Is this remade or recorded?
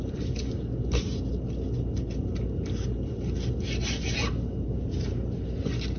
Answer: recorded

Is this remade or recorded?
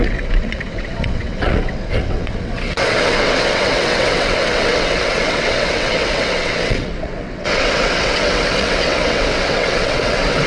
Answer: remade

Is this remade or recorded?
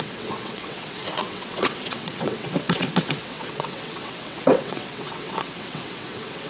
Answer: remade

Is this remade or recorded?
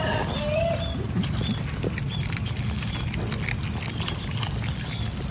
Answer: recorded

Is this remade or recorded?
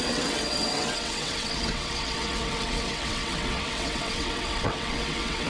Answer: remade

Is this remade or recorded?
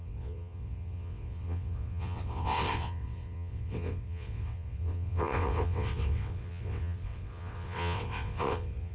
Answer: remade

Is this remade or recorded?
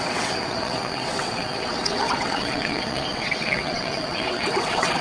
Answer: remade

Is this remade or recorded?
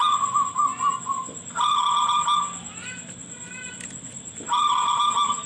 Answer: recorded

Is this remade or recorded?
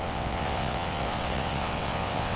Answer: remade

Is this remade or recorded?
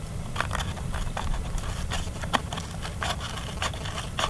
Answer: recorded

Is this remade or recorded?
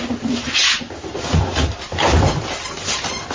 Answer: recorded